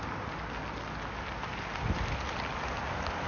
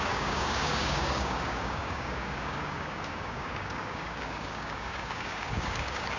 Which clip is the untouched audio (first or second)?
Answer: first